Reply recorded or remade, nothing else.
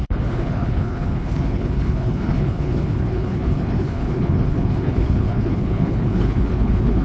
remade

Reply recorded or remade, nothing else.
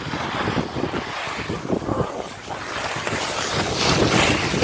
recorded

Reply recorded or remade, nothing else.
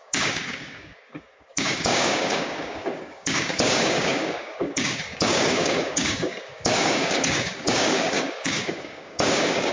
remade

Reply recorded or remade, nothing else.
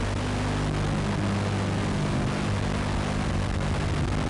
recorded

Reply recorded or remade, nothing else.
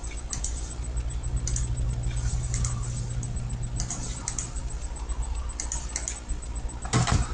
recorded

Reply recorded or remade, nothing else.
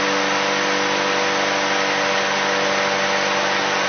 recorded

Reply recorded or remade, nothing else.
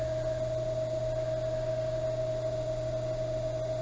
recorded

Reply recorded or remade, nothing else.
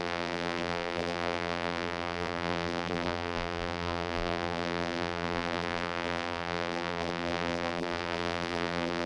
remade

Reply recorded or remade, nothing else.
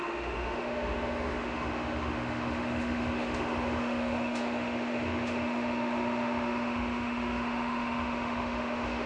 remade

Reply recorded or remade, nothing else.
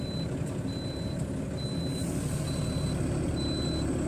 recorded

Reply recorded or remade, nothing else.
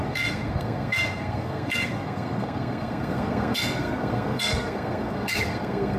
remade